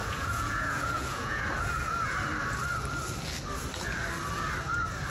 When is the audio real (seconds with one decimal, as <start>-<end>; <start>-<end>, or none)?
1.4-5.1